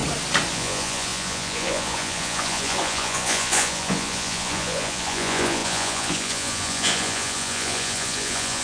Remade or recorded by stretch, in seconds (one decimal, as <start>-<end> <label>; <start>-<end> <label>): 0.0-0.5 recorded; 0.5-8.6 remade